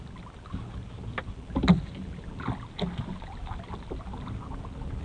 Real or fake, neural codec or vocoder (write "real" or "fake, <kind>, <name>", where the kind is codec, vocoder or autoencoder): real